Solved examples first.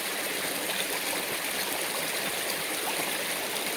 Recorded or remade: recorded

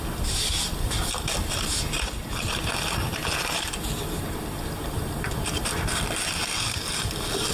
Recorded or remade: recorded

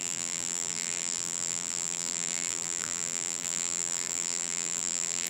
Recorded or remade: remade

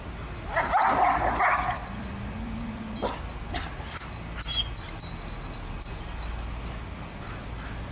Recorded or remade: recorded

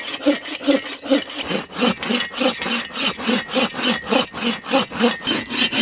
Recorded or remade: recorded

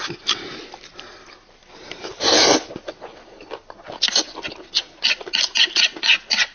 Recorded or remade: recorded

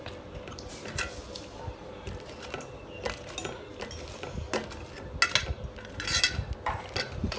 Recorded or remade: recorded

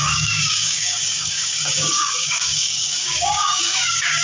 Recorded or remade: remade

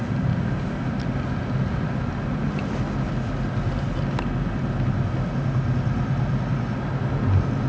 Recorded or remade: recorded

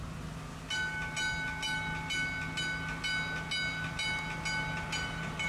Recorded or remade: recorded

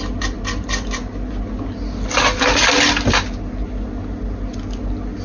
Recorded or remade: recorded